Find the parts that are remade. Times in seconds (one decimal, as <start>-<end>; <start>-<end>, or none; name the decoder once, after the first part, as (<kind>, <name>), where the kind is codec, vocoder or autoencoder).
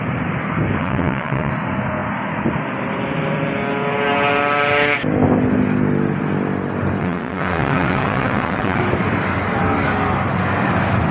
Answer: 0.8-1.5 (vocoder, WaveNeXt); 7.0-8.8